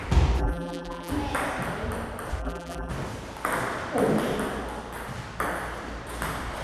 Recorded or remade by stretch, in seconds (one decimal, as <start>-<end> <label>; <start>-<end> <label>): 0.0-0.4 recorded; 0.4-1.1 remade; 1.1-2.4 recorded; 2.4-2.9 remade; 2.9-6.6 recorded